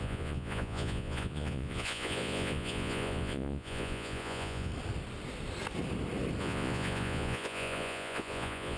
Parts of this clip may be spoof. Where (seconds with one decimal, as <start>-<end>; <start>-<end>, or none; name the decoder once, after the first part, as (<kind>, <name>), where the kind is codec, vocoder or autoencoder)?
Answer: 0.0-4.7 (vocoder, Vocos); 6.4-8.8